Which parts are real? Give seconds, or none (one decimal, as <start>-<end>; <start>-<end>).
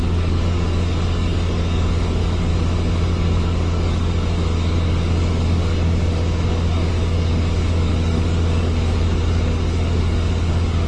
2.5-3.1